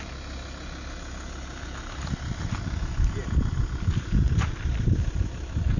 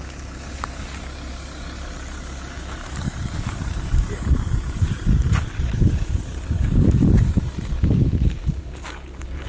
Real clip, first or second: first